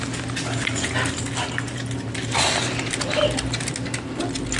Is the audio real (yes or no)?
yes